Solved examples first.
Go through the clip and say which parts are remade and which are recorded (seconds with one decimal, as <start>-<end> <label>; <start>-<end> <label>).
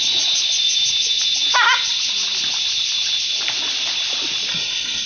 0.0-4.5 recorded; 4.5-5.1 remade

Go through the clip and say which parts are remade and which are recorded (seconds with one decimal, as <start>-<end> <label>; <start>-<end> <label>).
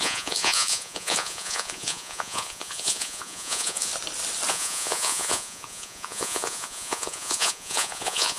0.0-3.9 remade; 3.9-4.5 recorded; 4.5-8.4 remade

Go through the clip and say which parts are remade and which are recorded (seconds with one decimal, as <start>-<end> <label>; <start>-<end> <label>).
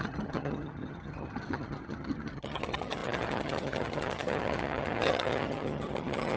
0.0-6.4 remade